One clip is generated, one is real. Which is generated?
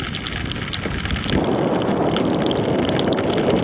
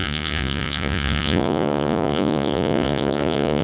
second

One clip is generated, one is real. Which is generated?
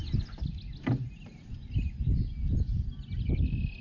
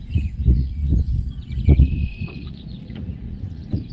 second